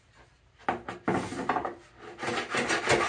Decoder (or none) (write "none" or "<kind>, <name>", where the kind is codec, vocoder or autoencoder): none